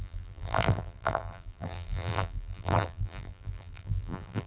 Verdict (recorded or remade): remade